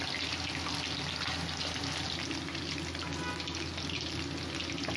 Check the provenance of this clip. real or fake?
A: real